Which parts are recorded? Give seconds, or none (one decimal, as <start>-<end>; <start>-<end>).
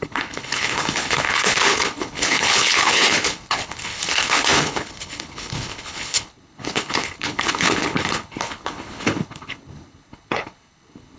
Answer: none